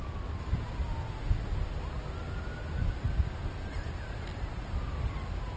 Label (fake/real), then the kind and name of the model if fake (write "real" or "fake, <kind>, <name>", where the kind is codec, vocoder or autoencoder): real